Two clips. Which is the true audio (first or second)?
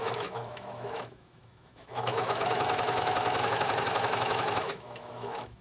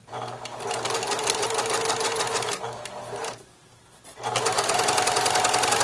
second